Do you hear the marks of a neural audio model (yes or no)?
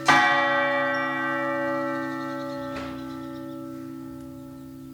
no